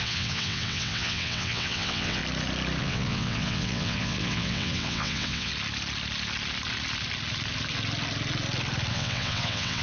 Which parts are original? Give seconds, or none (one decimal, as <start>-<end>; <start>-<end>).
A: 2.2-2.8; 5.5-8.9